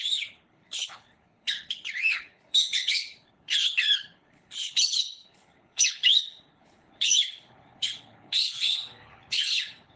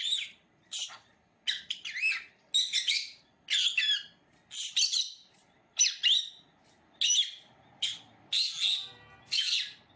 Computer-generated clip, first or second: first